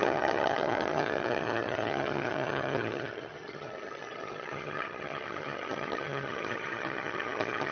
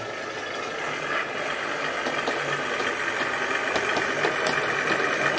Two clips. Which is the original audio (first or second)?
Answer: second